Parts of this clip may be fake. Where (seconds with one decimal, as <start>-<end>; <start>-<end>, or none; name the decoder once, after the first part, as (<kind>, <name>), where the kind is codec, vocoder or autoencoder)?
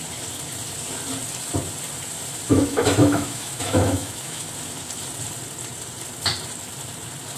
2.5-4.4 (autoencoder, DAC-VAE)